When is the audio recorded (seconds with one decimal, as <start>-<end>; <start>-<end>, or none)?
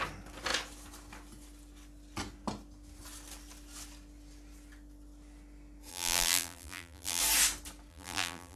0.0-5.9; 7.2-7.9